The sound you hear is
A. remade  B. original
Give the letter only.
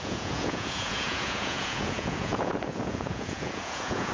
A